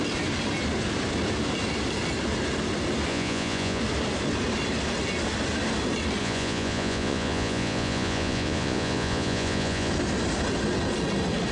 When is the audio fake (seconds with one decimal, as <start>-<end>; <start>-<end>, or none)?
3.1-3.8; 6.2-9.9